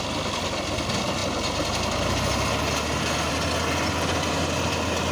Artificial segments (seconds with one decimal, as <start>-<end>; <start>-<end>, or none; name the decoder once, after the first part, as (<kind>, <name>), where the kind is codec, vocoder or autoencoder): none